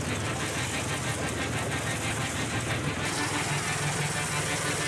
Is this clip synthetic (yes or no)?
no